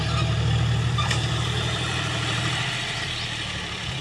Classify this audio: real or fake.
fake